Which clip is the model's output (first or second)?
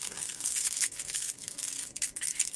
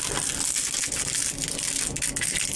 first